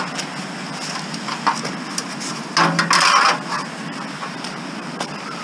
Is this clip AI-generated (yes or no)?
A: no